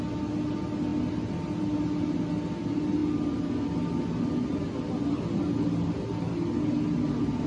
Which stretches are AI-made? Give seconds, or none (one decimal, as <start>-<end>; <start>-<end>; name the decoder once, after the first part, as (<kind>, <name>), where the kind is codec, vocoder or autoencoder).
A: none